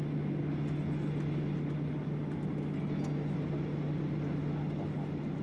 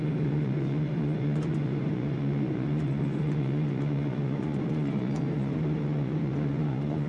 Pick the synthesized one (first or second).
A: second